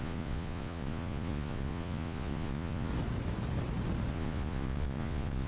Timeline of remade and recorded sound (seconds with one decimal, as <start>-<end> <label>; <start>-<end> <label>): 0.0-2.9 remade; 2.9-4.1 recorded; 4.1-5.5 remade